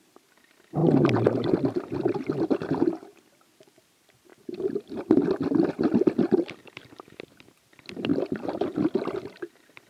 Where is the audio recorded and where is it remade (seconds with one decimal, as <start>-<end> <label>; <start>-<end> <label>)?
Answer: 0.0-9.9 recorded